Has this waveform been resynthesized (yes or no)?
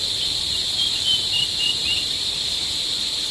no